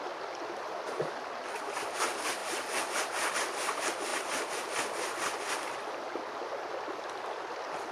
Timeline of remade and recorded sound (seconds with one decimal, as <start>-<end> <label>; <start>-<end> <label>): 0.0-4.1 recorded; 4.1-4.6 remade; 4.6-7.9 recorded